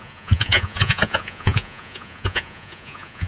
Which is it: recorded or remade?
remade